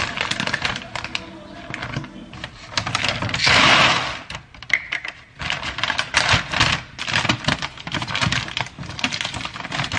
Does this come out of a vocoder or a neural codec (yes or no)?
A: no